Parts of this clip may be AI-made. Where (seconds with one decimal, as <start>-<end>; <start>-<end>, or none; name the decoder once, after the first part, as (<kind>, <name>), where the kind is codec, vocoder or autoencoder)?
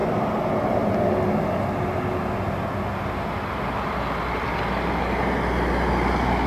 none